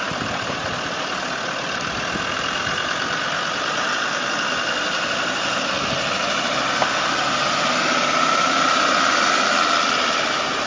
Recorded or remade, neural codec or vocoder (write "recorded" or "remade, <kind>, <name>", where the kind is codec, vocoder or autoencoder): recorded